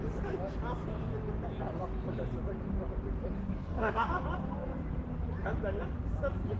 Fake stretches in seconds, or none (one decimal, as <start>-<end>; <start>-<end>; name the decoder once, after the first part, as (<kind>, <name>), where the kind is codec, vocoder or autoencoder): 3.4-4.1 (codec, SNAC)